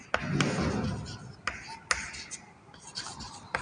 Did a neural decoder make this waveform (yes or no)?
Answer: no